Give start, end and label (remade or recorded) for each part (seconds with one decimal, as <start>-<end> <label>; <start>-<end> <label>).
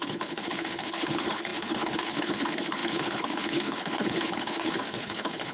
0.0-5.5 remade